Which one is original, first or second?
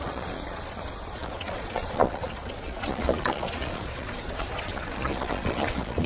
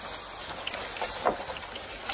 second